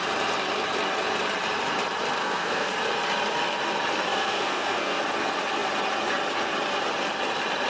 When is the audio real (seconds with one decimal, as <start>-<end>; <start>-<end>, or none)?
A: 0.0-2.2; 2.7-4.1; 5.0-7.7